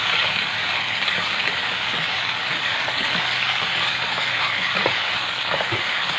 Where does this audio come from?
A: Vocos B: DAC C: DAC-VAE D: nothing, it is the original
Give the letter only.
B